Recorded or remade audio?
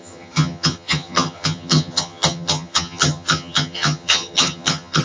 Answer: remade